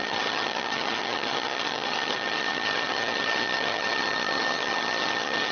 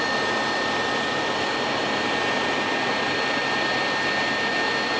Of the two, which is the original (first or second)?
second